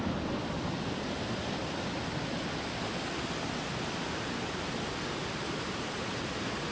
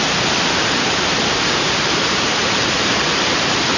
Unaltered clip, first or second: first